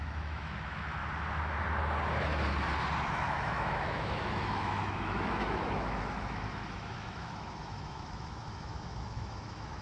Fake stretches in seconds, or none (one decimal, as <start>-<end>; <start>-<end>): 0.0-1.0; 3.1-9.8